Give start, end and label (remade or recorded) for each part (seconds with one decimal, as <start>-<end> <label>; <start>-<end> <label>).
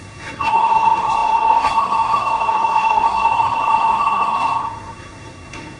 0.0-5.8 remade